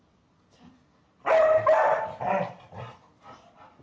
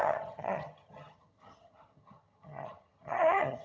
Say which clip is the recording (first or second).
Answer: first